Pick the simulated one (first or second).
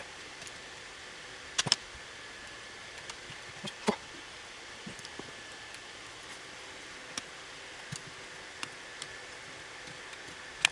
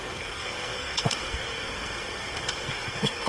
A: second